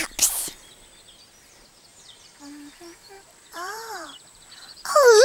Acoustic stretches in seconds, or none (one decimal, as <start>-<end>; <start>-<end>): 0.0-1.9